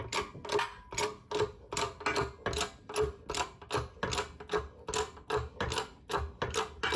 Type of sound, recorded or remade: recorded